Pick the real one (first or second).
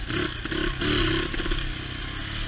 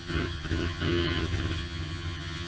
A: first